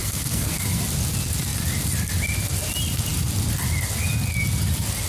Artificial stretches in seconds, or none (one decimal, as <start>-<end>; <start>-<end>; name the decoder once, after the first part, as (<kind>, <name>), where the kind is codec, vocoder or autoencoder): 0.0-0.8 (codec, SNAC)

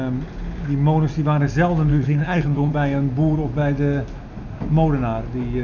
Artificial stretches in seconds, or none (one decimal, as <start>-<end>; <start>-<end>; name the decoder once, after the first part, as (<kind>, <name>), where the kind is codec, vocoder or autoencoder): 1.9-2.7 (codec, HILCodec)

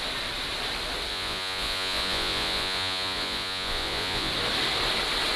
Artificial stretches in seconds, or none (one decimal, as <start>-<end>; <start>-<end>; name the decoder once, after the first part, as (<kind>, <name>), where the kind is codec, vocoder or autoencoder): 1.1-4.3 (vocoder, Vocos)

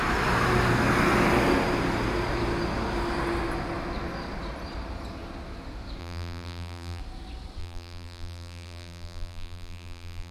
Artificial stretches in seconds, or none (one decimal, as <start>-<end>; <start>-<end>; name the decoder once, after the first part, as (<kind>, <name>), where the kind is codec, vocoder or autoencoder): 6.0-7.0 (vocoder, BigVGAN v2); 7.6-10.3

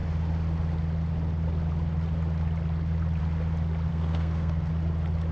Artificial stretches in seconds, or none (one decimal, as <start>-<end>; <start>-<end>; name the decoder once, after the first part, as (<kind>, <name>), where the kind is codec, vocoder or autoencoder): 3.9-4.7 (codec, SNAC)

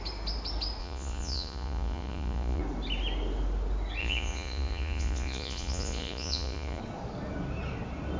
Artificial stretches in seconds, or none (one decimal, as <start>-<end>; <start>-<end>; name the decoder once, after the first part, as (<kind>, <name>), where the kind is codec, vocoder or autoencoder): 0.8-2.6 (vocoder, Vocos); 4.0-6.8

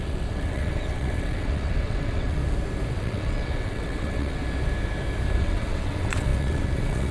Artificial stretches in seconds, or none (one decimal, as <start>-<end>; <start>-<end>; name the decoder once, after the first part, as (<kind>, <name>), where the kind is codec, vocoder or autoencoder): 0.0-2.4 (vocoder, WaveNeXt); 2.9-4.4; 5.4-7.1